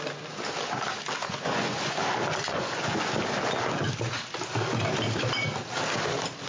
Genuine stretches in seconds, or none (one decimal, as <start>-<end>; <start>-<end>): 0.0-1.2; 2.0-2.5; 3.1-6.5